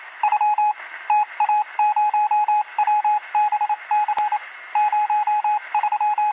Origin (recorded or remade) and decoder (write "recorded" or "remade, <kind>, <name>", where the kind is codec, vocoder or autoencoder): recorded